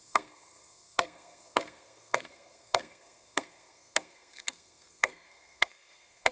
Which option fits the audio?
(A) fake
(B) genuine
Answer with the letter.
A